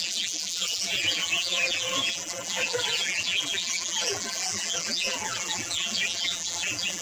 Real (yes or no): no